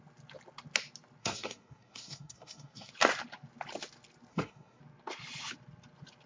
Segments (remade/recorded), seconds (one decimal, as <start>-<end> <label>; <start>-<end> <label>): 0.0-1.2 recorded; 1.2-2.9 remade; 2.9-4.3 recorded; 4.3-4.8 remade; 4.8-6.3 recorded

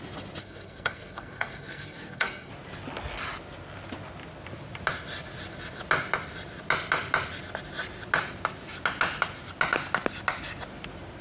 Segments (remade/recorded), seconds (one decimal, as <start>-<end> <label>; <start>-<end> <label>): 0.0-0.4 recorded; 0.4-2.5 remade; 2.5-11.2 recorded

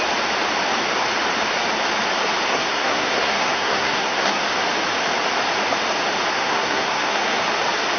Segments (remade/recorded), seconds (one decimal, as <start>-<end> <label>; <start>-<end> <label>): 0.0-2.5 recorded; 2.5-4.4 remade; 4.4-6.3 recorded; 6.3-7.4 remade; 7.4-8.0 recorded

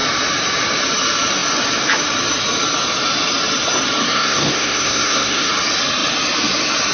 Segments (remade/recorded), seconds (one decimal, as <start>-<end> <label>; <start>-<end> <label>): 0.0-4.0 recorded; 4.0-5.5 remade; 5.5-6.9 recorded